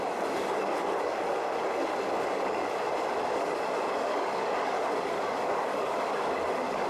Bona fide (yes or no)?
no